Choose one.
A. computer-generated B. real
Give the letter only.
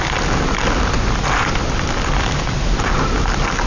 B